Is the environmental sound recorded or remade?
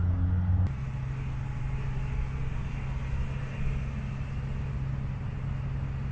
recorded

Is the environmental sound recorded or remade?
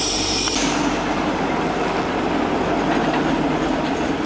recorded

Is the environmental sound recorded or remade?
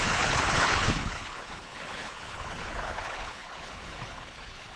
remade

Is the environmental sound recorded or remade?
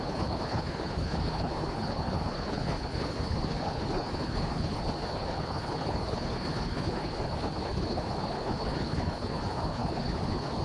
remade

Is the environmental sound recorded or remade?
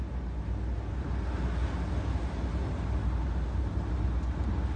recorded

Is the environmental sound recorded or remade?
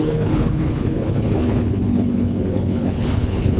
remade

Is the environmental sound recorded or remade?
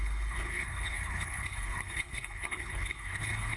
remade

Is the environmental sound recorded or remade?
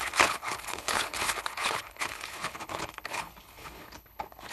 remade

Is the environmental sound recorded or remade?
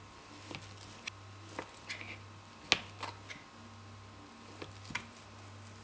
recorded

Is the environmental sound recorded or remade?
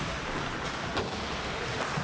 recorded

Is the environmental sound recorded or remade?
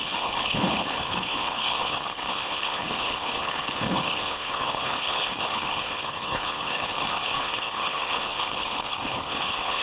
remade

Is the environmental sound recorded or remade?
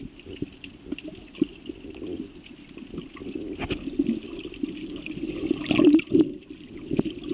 recorded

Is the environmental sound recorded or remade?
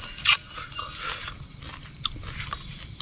recorded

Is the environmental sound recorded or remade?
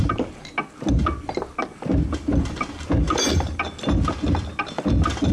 recorded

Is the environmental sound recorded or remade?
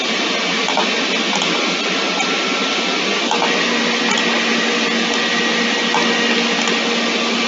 recorded